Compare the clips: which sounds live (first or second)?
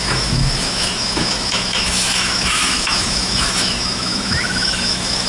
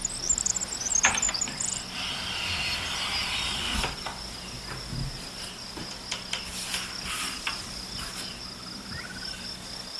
second